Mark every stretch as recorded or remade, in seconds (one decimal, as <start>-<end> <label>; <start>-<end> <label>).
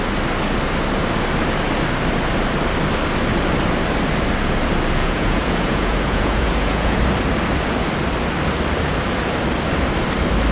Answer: 0.0-5.0 recorded; 5.0-7.0 remade; 7.0-10.5 recorded